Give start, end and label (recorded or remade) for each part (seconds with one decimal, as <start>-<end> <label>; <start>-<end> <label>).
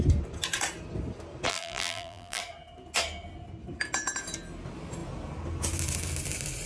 0.0-1.5 recorded; 1.5-2.4 remade; 2.4-6.7 recorded